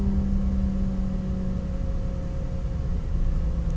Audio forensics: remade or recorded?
recorded